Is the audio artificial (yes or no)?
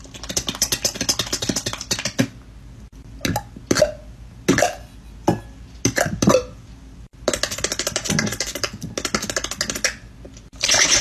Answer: no